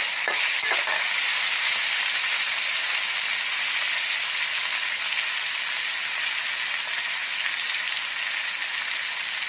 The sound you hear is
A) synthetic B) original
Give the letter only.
B